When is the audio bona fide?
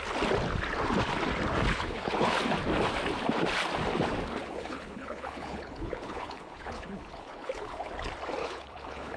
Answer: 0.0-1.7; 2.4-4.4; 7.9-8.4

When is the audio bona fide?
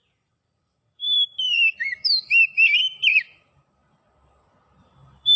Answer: none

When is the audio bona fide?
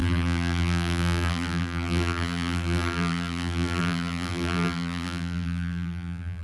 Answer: none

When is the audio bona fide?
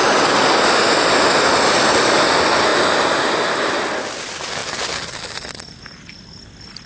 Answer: 0.0-6.9